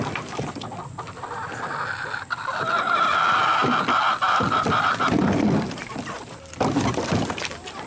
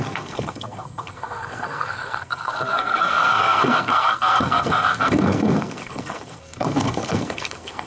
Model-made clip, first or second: second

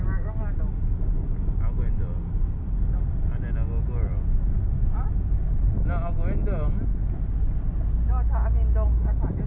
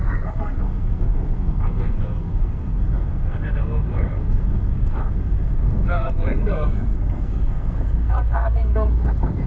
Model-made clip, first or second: second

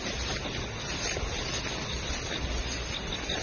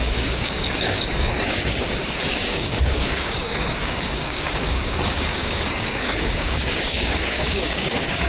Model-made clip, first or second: second